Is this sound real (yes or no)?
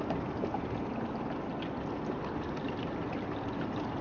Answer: yes